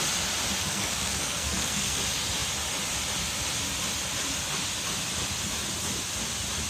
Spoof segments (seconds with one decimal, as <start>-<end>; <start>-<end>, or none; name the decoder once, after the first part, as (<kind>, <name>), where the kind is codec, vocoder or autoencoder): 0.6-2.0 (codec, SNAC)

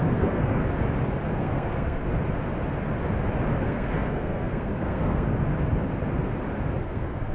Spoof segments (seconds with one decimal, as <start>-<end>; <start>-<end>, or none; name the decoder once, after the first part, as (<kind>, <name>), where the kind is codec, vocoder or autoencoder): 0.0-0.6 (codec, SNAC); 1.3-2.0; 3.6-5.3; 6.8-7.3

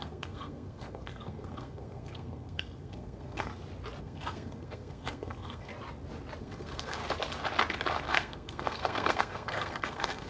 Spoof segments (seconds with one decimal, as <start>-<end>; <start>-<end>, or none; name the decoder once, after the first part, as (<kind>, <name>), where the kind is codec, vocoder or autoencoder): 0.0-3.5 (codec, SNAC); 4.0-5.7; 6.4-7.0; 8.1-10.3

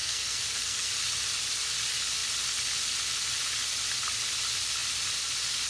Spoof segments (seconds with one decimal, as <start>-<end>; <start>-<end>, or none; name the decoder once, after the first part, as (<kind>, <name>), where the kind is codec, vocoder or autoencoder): 0.0-0.9 (codec, SNAC)